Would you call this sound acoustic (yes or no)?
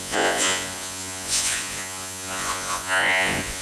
no